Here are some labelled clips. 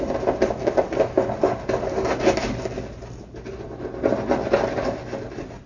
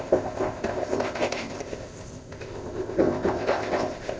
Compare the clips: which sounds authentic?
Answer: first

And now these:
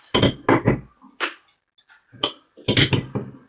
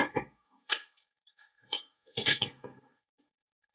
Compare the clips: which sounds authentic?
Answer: first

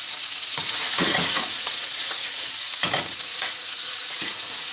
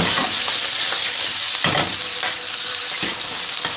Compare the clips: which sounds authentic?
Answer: second